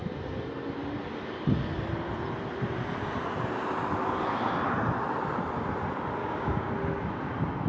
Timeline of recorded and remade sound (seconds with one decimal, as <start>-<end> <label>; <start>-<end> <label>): 0.0-6.2 recorded; 6.2-6.7 remade; 6.7-7.7 recorded